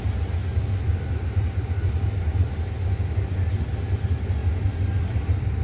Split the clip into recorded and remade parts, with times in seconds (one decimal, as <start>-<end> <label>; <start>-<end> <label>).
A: 0.0-4.4 recorded; 4.4-5.6 remade